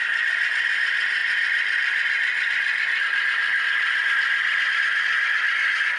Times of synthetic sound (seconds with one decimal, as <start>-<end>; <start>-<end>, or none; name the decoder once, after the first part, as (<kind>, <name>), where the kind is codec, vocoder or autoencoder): none